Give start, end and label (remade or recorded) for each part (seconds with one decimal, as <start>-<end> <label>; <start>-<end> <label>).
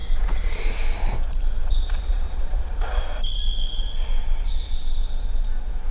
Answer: 0.0-0.6 remade; 0.6-1.6 recorded; 1.6-3.0 remade; 3.0-4.2 recorded; 4.2-5.0 remade; 5.0-5.9 recorded